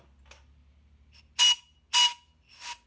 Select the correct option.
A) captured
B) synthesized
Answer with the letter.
A